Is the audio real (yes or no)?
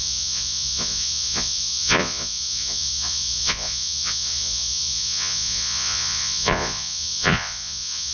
no